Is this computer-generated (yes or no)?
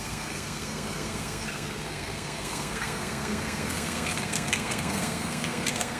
yes